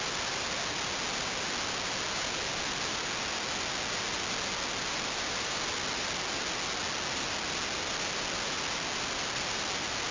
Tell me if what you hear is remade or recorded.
recorded